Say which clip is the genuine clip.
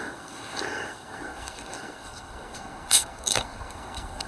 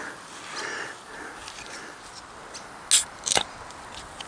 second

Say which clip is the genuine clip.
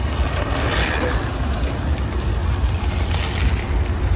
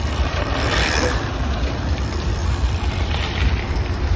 first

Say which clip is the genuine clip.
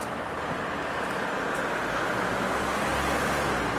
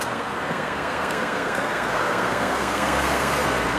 first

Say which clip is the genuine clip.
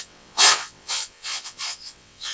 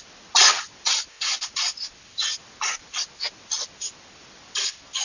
second